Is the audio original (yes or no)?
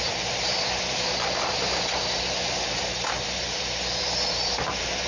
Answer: no